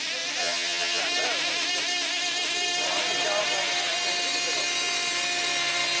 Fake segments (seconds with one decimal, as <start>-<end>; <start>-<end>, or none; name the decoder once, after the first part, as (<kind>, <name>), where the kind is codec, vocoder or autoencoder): 0.4-1.0 (vocoder, HiFi-GAN)